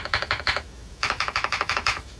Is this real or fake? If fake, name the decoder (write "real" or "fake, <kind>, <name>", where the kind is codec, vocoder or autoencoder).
fake, autoencoder, DAC-VAE